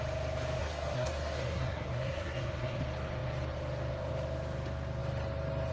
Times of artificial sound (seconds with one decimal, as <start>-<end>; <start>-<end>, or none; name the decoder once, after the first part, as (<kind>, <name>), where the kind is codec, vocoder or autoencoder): 0.6-2.8 (codec, SNAC)

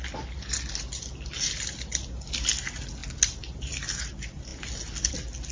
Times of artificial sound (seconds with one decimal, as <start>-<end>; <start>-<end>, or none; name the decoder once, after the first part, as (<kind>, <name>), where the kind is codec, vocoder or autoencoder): none

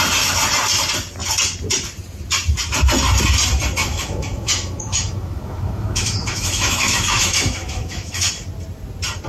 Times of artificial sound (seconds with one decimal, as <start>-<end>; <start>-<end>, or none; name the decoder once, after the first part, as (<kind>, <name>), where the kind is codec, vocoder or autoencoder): 3.8-8.3 (autoencoder, DAC-VAE)

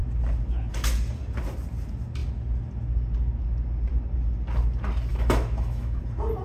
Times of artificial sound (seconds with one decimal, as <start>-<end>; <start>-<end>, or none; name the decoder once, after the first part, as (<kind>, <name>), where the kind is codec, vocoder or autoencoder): 5.1-6.0 (autoencoder, DAC-VAE)

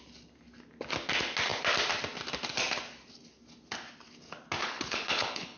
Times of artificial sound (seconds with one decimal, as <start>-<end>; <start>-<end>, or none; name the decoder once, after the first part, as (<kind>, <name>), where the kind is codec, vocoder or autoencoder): 4.6-5.6 (codec, HILCodec)

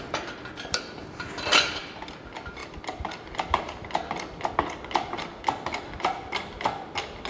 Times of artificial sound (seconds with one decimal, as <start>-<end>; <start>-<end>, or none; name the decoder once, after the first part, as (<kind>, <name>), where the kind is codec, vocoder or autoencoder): none